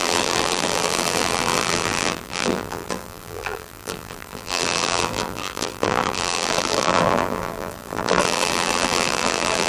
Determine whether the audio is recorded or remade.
remade